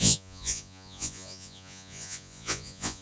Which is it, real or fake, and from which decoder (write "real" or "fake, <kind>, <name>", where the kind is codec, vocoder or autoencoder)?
fake, vocoder, Vocos